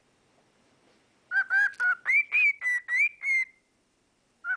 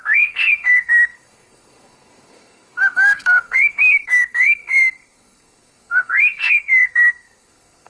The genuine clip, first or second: first